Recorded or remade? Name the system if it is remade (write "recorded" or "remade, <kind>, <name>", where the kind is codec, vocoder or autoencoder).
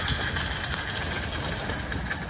recorded